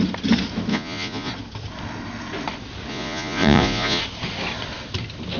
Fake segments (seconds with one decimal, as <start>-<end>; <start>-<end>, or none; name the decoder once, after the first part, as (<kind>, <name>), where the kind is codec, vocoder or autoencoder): 0.7-1.3 (vocoder, Vocos); 2.9-4.0